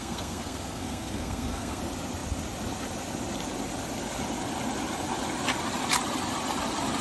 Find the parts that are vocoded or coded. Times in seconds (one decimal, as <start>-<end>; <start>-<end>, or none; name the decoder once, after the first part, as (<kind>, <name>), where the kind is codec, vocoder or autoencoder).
0.0-1.8 (codec, SNAC)